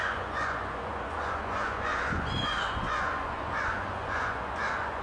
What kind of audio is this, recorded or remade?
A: remade